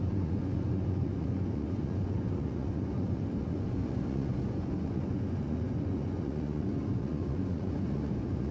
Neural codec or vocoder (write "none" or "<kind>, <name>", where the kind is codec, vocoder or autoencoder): vocoder, Vocos